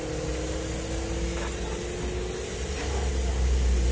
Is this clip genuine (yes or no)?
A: yes